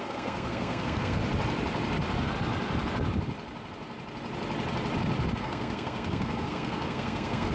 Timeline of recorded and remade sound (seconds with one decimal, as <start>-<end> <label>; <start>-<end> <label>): 0.0-1.2 remade; 1.2-5.4 recorded; 5.4-7.5 remade